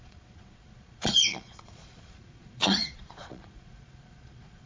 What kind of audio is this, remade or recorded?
remade